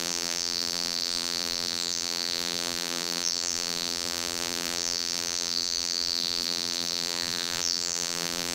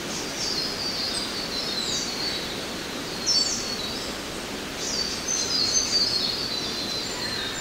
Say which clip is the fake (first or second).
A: first